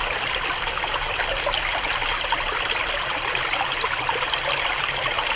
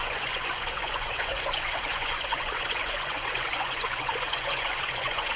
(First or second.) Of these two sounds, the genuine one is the first